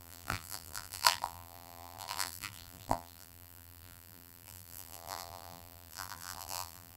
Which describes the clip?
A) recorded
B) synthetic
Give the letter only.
B